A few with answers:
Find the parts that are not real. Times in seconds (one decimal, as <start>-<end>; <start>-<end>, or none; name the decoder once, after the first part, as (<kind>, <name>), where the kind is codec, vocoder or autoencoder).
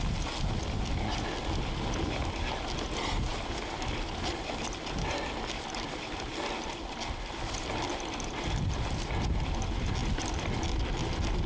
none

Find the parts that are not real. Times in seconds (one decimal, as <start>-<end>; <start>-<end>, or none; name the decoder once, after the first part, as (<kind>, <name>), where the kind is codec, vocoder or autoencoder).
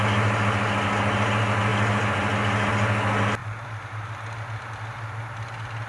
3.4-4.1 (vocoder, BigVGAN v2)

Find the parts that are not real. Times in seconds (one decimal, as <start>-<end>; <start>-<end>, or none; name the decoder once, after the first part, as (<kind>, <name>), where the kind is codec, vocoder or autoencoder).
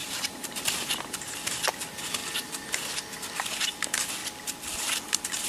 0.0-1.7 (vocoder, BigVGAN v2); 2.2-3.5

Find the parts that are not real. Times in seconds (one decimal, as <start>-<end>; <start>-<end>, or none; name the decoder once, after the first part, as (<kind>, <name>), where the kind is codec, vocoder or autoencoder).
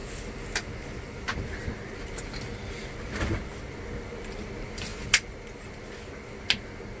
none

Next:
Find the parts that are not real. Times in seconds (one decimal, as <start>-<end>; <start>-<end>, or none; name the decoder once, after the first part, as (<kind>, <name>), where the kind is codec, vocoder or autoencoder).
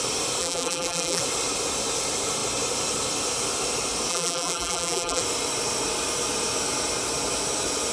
0.4-1.2 (vocoder, BigVGAN v2); 4.1-5.2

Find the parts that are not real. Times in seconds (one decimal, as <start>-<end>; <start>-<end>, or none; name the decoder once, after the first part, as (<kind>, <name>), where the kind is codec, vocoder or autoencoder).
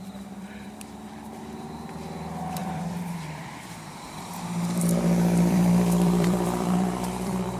2.6-7.6 (vocoder, BigVGAN v2)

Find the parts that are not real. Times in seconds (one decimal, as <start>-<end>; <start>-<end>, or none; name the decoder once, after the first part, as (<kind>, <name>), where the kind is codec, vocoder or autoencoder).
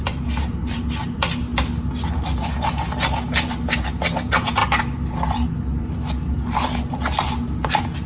none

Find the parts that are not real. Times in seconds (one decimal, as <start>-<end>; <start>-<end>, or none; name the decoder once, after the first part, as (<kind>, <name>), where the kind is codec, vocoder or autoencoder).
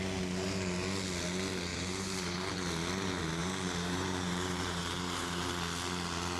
1.7-2.5 (vocoder, BigVGAN v2); 3.4-5.5